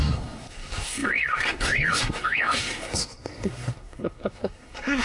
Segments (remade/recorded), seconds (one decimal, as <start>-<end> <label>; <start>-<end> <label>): 0.0-5.0 remade

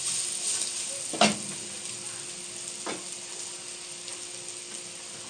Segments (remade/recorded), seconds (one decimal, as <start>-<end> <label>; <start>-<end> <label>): 0.0-5.3 recorded

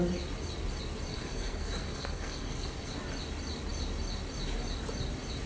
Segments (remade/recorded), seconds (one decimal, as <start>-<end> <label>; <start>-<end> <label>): 0.0-1.1 recorded; 1.1-2.9 remade; 2.9-5.5 recorded

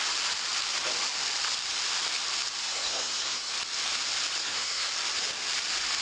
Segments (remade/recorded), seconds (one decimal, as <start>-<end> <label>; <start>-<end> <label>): 0.0-2.6 recorded; 2.6-3.5 remade; 3.5-4.4 recorded; 4.4-4.9 remade; 4.9-6.0 recorded